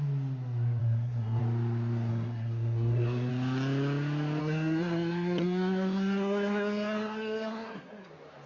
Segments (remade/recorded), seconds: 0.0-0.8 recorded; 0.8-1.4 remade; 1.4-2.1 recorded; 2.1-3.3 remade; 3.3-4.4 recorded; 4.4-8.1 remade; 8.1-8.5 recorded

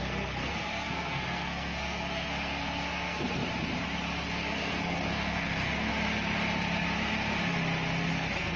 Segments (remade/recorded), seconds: 0.0-3.4 remade; 3.4-4.3 recorded; 4.3-5.9 remade; 5.9-8.1 recorded; 8.1-8.6 remade

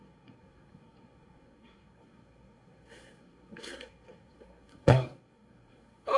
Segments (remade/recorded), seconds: 0.0-6.2 remade

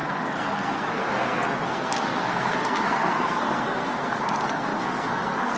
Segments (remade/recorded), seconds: 0.0-5.6 remade

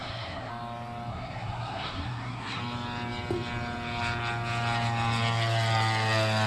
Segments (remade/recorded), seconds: 0.0-0.5 remade; 0.5-1.1 recorded; 1.1-2.6 remade; 2.6-6.5 recorded